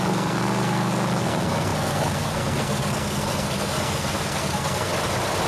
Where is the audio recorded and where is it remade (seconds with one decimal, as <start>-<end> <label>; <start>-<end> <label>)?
0.0-4.9 remade; 4.9-5.5 recorded